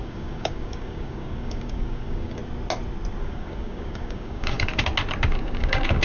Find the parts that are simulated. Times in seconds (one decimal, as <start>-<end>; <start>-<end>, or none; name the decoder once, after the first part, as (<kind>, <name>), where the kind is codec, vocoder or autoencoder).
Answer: 0.0-2.4 (codec, DAC); 3.2-4.7; 5.3-6.0